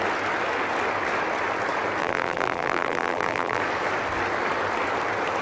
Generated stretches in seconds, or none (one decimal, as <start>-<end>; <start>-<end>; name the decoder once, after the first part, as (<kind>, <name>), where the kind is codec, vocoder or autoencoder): 2.0-3.6 (vocoder, BigVGAN v2)